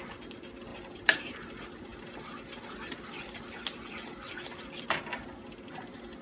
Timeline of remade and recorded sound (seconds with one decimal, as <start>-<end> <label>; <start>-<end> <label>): 0.0-0.7 recorded; 0.7-1.3 remade; 1.3-6.2 recorded